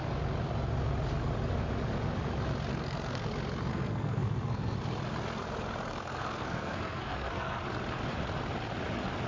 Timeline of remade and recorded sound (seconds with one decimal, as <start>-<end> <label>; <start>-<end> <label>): 0.0-2.7 recorded; 2.7-3.3 remade; 3.3-3.7 recorded; 3.7-4.8 remade; 4.8-5.9 recorded; 5.9-7.6 remade; 7.6-9.3 recorded